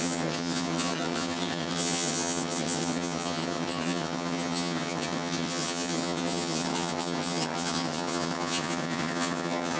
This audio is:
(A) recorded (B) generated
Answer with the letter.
B